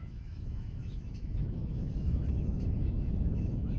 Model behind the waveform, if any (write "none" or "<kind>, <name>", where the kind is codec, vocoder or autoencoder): autoencoder, DAC-VAE